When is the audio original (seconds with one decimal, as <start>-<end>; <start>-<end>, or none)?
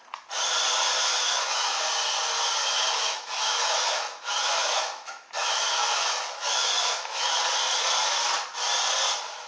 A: 0.0-1.1; 1.9-2.6; 7.4-9.5